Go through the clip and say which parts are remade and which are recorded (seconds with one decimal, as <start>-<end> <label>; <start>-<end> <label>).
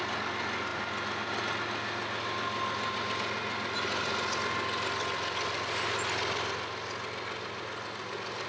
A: 0.0-8.5 recorded